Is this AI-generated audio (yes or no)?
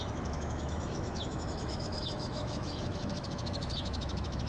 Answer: yes